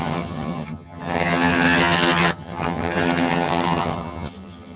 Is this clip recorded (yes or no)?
no